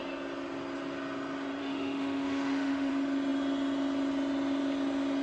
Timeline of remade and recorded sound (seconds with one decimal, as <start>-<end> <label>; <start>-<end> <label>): 0.0-1.6 recorded; 1.6-2.9 remade; 2.9-5.2 recorded